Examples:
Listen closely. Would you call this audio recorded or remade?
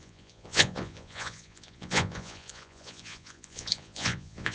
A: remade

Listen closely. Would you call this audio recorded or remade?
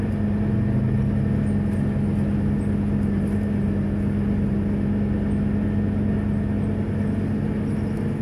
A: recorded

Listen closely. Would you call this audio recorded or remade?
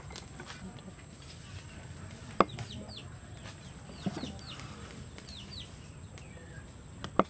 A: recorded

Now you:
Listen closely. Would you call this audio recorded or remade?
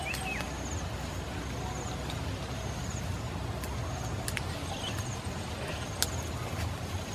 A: recorded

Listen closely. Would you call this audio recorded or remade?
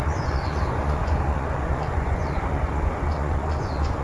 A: remade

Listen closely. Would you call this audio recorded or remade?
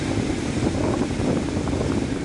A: recorded